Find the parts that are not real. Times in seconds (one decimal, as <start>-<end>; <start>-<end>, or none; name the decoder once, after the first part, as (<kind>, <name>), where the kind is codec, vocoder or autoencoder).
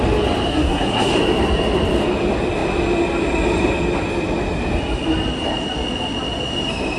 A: 0.5-1.1 (codec, SNAC)